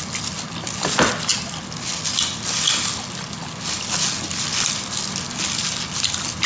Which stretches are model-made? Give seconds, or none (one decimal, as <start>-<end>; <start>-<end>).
none